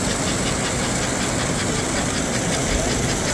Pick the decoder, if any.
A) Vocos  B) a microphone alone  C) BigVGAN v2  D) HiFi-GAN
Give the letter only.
C